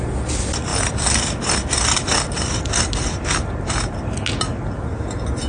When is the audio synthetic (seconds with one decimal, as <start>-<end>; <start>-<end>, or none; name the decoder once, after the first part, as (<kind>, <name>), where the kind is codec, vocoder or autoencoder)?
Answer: none